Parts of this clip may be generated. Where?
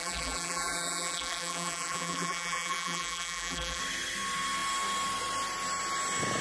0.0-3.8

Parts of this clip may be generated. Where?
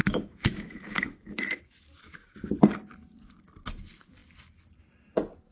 0.0-2.6